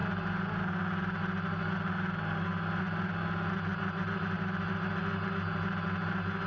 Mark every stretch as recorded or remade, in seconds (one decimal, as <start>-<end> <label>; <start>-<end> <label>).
0.0-6.5 recorded